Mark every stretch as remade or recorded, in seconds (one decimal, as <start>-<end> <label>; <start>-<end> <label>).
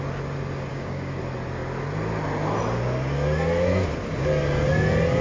0.0-0.7 recorded; 0.7-1.2 remade; 1.2-5.2 recorded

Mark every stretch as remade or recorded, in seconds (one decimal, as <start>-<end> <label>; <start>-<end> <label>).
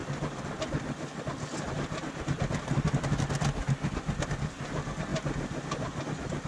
0.0-5.1 recorded; 5.1-6.0 remade; 6.0-6.5 recorded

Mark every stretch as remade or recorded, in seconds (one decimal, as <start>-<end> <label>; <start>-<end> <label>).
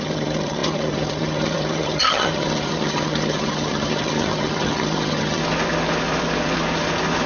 0.0-5.4 remade; 5.4-7.3 recorded